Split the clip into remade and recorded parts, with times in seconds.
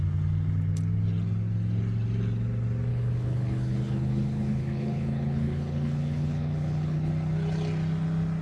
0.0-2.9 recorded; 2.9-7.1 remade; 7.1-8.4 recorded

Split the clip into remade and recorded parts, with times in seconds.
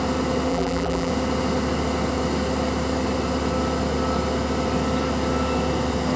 0.0-0.5 recorded; 0.5-1.1 remade; 1.1-6.2 recorded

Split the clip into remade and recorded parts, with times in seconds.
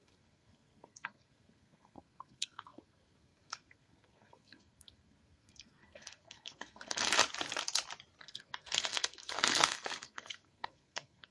0.0-7.2 remade; 7.2-8.2 recorded; 8.2-11.3 remade